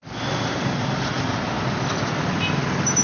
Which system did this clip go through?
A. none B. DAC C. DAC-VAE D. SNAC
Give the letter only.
A